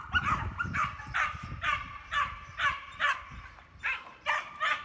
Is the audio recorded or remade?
remade